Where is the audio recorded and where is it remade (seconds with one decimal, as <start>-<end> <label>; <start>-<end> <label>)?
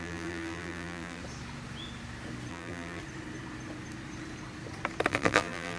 0.0-1.2 remade; 1.2-2.5 recorded; 2.5-3.0 remade; 3.0-5.1 recorded; 5.1-5.8 remade